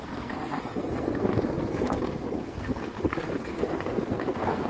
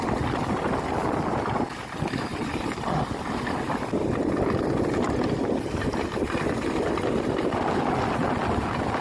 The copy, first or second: first